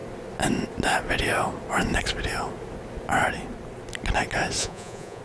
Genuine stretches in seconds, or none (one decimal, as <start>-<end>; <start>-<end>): 0.0-4.6